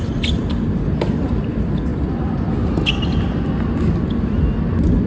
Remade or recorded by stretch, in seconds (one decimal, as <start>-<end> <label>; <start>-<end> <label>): 0.0-5.1 recorded